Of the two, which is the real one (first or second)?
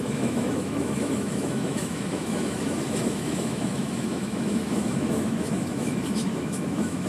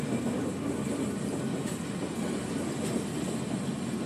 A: second